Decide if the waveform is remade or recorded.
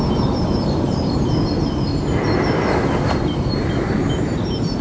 remade